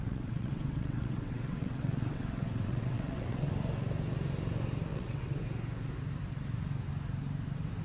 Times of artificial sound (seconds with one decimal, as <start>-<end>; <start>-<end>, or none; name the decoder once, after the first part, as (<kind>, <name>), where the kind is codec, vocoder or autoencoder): 0.0-3.5 (vocoder, WaveNeXt); 4.9-5.4

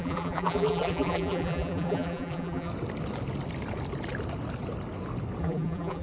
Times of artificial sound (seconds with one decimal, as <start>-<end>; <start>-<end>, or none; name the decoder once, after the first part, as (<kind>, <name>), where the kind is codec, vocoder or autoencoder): 0.0-2.7 (vocoder, BigVGAN v2); 5.4-6.0